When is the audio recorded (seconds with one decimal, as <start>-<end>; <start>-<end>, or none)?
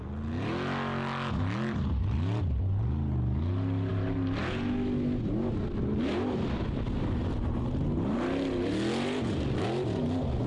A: 0.0-10.5